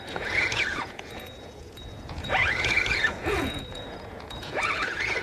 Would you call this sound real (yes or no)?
no